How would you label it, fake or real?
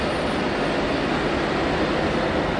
real